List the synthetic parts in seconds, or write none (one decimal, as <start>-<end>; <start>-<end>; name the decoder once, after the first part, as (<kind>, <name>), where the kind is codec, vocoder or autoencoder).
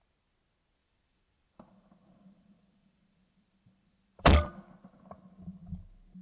0.8-4.5 (vocoder, BigVGAN v2)